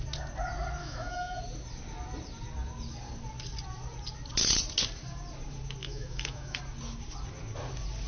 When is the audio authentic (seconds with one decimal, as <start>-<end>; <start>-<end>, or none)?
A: 0.0-0.8; 1.4-5.8; 6.6-8.1